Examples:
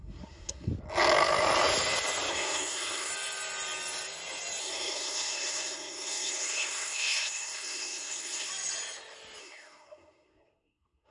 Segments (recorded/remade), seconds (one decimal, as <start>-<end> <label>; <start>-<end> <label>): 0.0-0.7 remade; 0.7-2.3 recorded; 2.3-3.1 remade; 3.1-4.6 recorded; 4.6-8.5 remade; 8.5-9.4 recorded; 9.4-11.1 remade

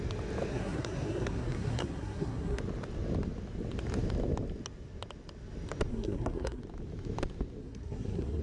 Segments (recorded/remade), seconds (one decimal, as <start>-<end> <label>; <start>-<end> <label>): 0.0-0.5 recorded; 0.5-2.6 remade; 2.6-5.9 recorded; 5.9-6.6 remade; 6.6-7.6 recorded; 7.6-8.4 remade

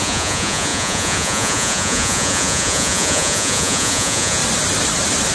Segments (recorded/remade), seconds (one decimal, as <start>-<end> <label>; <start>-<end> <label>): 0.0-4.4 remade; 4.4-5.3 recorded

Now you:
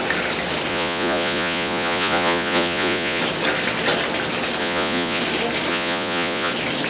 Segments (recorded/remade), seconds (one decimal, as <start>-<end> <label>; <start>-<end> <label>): 0.0-0.7 recorded; 0.7-3.2 remade; 3.2-4.6 recorded; 4.6-5.2 remade; 5.2-5.7 recorded; 5.7-6.5 remade; 6.5-6.9 recorded

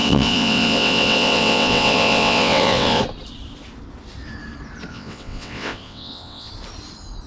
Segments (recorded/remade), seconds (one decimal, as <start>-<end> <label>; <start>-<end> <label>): 0.0-3.0 remade; 3.0-4.9 recorded; 4.9-6.5 remade; 6.5-7.3 recorded

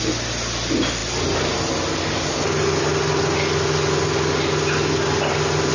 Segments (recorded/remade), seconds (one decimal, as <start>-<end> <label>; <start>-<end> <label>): 0.0-5.7 recorded

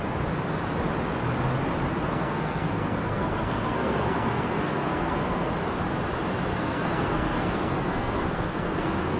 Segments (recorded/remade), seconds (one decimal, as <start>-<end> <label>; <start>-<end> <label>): 0.0-2.0 recorded; 2.0-5.5 remade; 5.5-6.5 recorded; 6.5-9.2 remade